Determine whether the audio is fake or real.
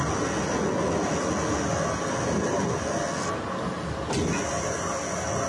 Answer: real